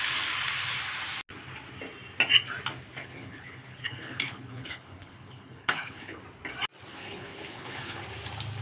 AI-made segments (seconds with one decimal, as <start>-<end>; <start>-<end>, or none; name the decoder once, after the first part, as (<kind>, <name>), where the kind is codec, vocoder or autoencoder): 3.0-6.2 (codec, HILCodec); 6.9-8.0